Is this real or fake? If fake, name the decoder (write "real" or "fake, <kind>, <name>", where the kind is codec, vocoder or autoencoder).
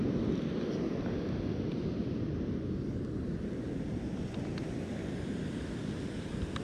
real